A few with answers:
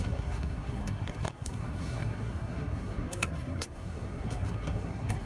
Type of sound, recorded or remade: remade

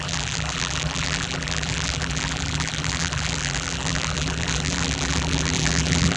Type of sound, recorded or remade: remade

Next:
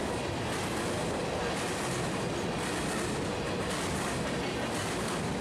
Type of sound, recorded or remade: recorded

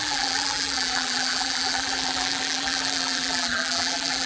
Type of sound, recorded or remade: remade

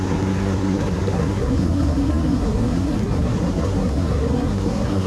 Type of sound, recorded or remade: remade